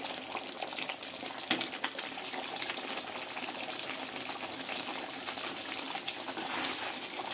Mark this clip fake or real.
real